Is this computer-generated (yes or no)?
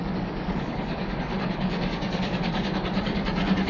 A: yes